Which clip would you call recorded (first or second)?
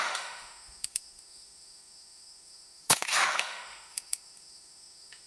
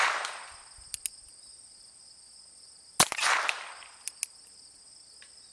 second